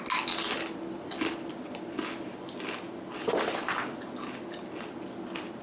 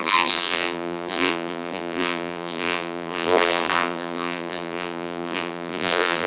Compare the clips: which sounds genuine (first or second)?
first